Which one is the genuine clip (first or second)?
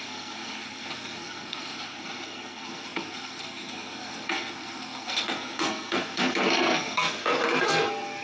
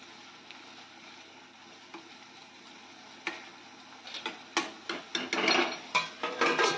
second